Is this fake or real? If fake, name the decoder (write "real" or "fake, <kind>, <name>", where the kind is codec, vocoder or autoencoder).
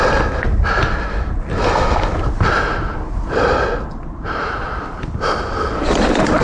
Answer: real